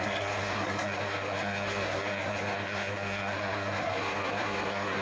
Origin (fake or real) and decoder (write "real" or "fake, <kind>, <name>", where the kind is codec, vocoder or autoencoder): fake, codec, SNAC